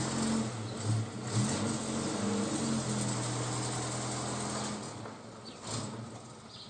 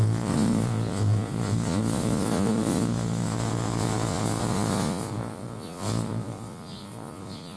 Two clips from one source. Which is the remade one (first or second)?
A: second